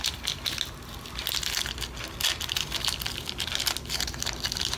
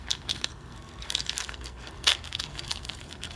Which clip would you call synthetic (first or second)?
second